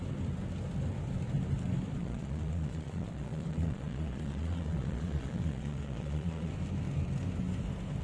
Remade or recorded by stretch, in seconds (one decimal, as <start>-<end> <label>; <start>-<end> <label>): 0.0-2.0 recorded; 2.0-6.5 remade; 6.5-8.0 recorded